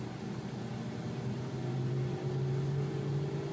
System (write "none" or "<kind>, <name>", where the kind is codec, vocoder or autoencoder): none